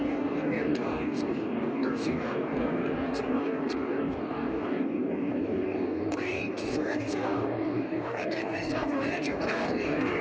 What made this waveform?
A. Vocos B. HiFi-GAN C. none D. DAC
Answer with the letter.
D